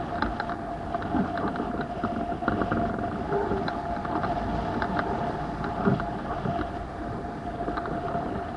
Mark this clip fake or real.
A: real